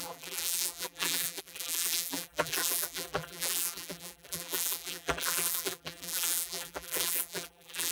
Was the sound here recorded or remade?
remade